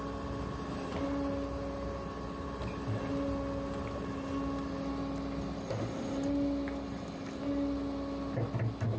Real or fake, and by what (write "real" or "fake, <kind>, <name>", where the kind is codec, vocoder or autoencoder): real